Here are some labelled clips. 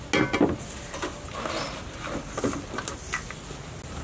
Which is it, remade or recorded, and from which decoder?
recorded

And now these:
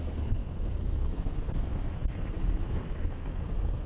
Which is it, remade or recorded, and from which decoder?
remade, codec, SNAC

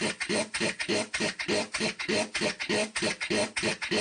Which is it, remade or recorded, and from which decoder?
recorded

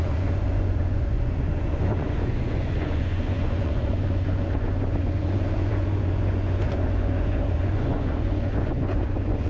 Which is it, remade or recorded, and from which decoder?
remade, vocoder, Vocos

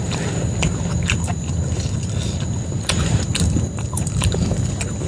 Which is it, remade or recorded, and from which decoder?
remade, vocoder, BigVGAN v2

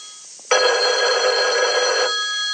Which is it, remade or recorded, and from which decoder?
recorded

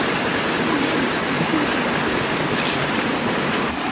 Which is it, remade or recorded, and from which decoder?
recorded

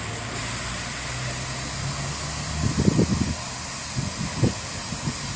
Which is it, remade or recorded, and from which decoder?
recorded